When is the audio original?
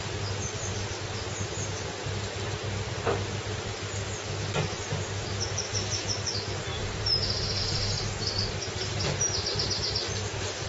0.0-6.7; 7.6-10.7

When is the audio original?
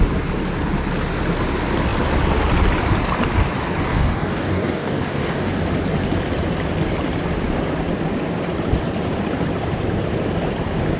0.0-3.9; 5.5-11.0